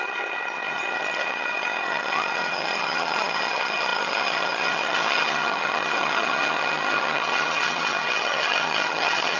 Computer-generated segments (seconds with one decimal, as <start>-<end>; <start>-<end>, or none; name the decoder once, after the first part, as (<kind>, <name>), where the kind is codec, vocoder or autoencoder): 0.0-9.4 (vocoder, HiFi-GAN)